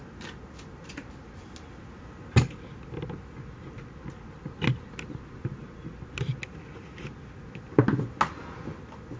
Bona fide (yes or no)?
yes